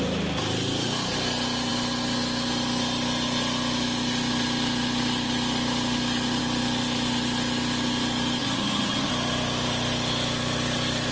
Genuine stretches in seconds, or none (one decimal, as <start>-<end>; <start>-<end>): 0.0-8.4; 9.1-11.1